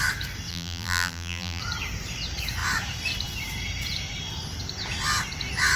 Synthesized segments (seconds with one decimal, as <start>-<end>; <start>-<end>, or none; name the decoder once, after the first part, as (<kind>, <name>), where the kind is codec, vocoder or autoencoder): 0.5-1.6 (vocoder, BigVGAN v2)